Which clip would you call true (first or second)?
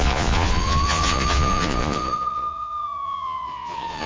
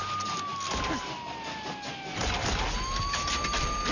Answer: second